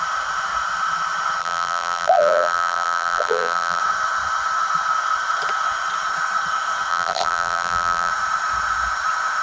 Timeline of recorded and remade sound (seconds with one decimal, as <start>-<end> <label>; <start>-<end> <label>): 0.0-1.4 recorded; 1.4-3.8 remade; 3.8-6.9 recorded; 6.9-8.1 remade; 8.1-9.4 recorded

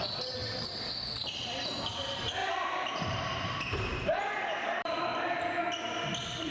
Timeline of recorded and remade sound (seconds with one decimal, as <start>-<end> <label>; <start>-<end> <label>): 0.0-0.4 recorded; 0.4-0.9 remade; 0.9-2.4 recorded; 2.4-5.0 remade; 5.0-6.5 recorded

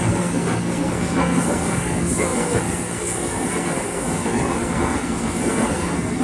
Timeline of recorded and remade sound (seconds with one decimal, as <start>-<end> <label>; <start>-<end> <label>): 0.0-6.2 remade

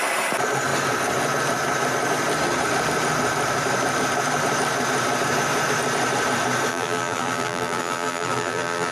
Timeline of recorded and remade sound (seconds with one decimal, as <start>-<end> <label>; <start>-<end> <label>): 0.0-6.7 recorded; 6.7-8.9 remade